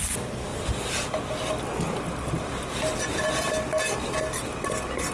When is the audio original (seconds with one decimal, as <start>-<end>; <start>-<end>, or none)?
0.0-0.5; 1.7-5.1